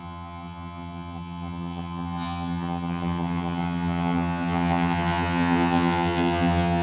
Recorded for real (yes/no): no